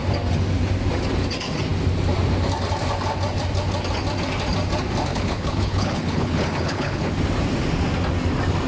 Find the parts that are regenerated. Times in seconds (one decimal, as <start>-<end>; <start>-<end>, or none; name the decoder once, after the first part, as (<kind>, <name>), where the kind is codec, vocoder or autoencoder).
5.1-7.1 (codec, HILCodec)